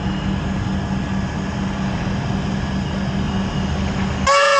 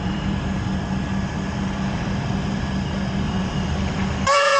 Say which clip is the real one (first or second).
first